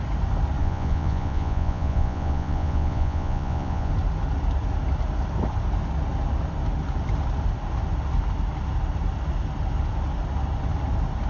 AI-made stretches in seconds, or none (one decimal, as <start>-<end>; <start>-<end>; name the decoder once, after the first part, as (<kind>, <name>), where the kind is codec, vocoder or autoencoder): 0.6-3.9 (vocoder, Vocos)